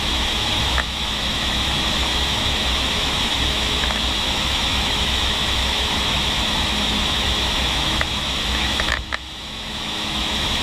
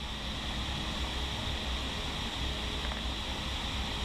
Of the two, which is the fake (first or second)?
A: first